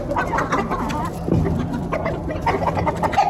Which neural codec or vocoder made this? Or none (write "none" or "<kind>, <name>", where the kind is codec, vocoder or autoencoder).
none